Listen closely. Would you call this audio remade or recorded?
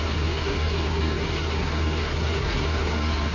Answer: remade